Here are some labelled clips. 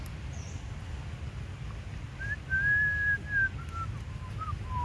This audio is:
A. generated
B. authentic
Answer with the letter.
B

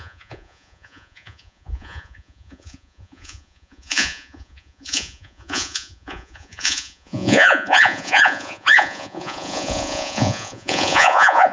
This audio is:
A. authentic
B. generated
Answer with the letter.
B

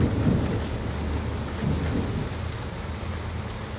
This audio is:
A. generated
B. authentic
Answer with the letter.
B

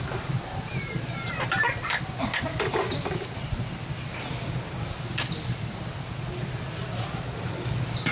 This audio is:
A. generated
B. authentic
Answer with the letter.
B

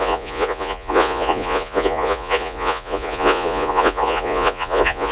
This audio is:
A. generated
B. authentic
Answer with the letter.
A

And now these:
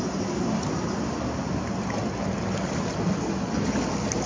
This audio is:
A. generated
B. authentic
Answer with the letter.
B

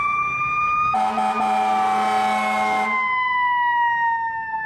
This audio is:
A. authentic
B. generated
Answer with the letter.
A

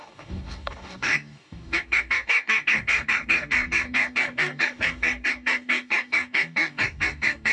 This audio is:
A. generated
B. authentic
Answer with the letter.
A